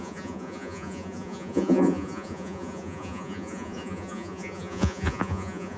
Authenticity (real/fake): fake